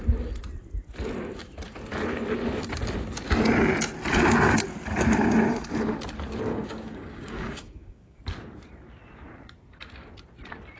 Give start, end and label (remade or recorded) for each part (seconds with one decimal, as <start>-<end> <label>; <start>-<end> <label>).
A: 0.0-6.5 recorded; 6.5-8.2 remade; 8.2-10.8 recorded